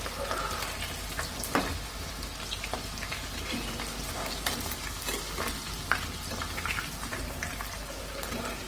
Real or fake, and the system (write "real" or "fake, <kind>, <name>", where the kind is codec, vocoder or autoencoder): real